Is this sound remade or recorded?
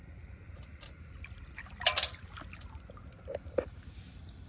recorded